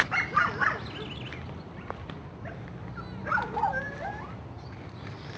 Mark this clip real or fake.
real